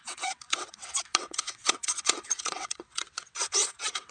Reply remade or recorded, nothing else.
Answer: remade